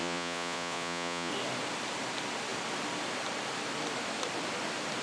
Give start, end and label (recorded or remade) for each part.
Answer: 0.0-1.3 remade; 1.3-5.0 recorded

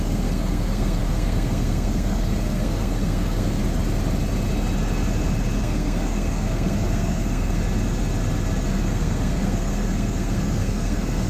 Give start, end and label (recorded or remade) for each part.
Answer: 0.0-3.6 remade; 3.6-5.6 recorded; 5.6-7.6 remade; 7.6-8.7 recorded; 8.7-11.3 remade

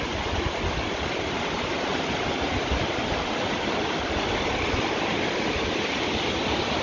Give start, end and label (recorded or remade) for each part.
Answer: 0.0-1.9 recorded; 1.9-5.9 remade; 5.9-6.8 recorded